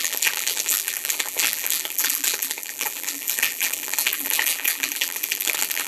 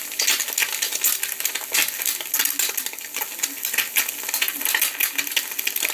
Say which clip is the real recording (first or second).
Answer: second